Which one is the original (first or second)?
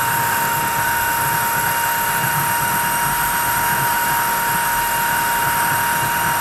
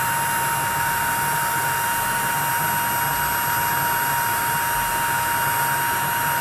second